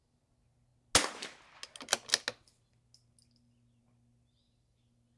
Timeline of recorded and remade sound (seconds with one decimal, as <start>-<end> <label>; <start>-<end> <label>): 0.0-5.2 recorded